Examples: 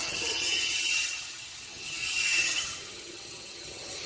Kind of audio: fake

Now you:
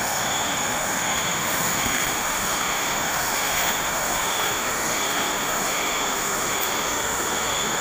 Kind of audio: fake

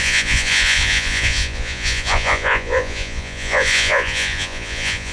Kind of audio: fake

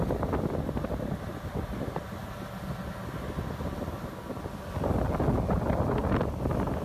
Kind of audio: real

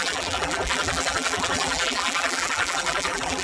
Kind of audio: fake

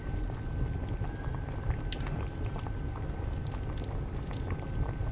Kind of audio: real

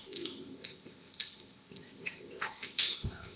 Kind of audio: fake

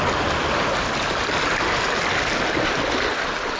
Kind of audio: real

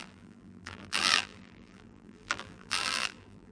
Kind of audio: fake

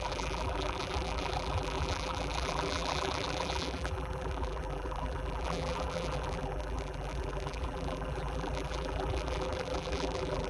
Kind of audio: fake